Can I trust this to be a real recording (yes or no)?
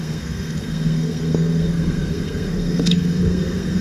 no